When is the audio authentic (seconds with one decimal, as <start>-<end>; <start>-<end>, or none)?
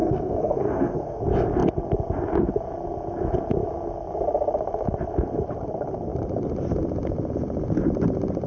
1.2-8.5